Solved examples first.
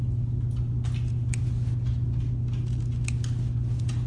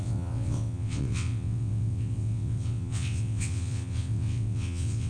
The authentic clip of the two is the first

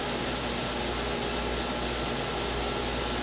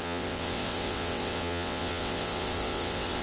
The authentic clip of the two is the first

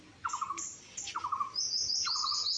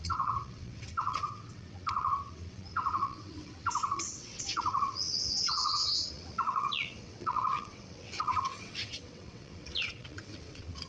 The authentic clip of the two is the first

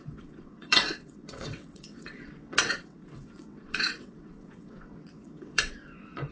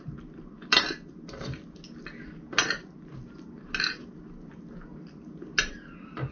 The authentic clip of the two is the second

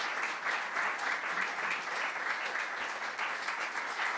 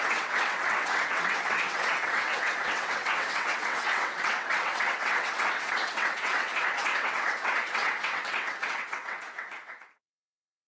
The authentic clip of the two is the first